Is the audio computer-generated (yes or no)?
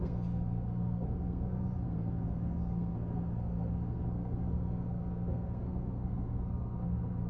yes